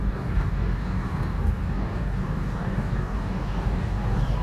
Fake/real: fake